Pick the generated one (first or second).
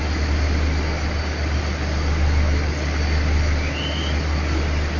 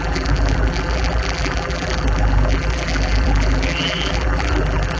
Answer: second